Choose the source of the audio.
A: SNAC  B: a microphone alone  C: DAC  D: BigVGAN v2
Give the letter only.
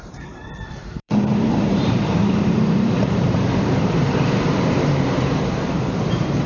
D